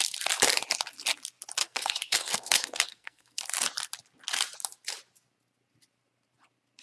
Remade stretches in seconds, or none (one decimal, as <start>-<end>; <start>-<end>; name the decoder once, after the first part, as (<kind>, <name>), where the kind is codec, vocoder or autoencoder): 1.6-3.4 (codec, SNAC)